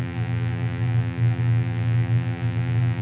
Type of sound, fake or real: fake